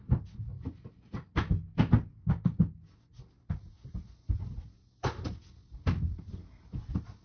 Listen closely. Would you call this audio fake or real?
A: real